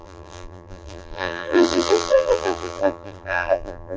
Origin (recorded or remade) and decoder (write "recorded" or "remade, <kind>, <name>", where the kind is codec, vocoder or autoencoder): remade, vocoder, BigVGAN v2